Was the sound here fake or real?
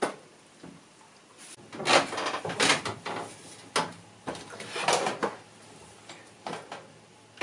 real